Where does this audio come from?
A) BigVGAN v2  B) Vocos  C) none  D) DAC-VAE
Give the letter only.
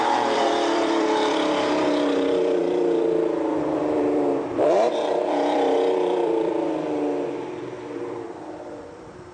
A